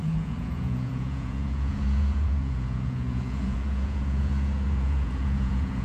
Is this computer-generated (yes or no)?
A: yes